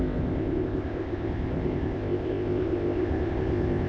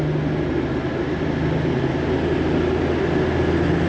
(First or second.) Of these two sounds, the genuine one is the second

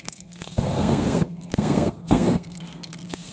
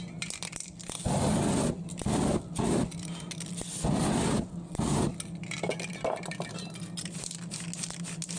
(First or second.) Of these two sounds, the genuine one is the second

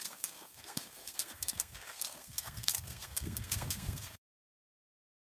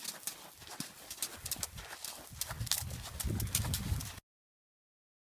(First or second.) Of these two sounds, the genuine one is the second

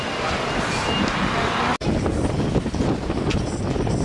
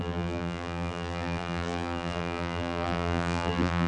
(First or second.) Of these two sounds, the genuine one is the first